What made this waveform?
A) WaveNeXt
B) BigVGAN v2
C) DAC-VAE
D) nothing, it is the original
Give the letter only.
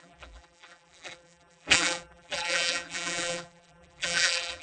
B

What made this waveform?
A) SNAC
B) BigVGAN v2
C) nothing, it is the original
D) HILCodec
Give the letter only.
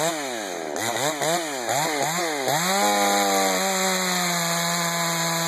C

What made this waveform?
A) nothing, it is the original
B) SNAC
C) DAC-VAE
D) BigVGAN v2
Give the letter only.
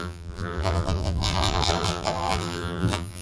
D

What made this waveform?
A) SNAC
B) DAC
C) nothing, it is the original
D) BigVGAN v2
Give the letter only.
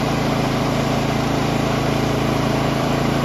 D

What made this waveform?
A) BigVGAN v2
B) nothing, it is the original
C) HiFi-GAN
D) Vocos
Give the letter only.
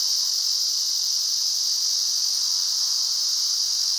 B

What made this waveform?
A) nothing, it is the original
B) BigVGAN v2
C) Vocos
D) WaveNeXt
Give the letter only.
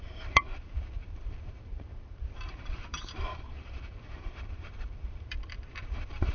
B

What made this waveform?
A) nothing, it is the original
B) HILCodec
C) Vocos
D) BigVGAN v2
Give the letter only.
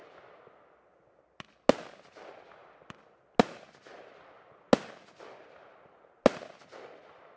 A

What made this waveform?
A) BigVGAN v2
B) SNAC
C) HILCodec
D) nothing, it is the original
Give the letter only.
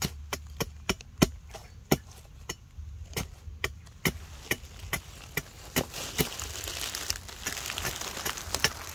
D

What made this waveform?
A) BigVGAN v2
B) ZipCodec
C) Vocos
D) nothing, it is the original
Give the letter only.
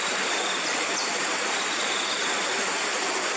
A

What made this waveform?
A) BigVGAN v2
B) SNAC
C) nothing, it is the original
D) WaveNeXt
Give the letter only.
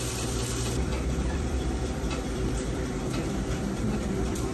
A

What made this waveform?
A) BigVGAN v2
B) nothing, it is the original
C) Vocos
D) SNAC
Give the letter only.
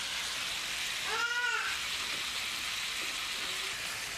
B